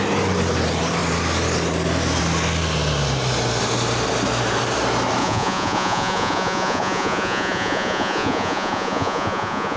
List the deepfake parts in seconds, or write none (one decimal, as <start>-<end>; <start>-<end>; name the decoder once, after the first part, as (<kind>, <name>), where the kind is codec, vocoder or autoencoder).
5.2-9.8 (vocoder, Vocos)